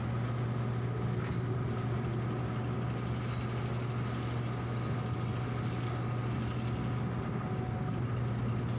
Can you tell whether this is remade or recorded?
recorded